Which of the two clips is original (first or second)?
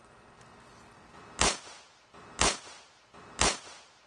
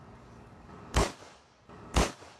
first